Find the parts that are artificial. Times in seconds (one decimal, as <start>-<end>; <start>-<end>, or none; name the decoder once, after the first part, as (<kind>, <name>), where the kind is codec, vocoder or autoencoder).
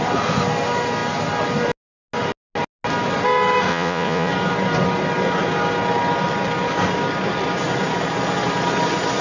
3.7-4.3 (vocoder, Vocos)